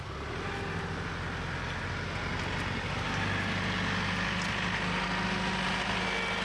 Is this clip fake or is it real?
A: real